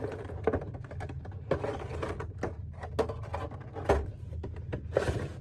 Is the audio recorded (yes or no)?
yes